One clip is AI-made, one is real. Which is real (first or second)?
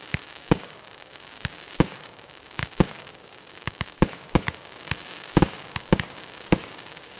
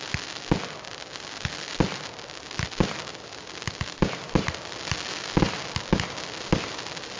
second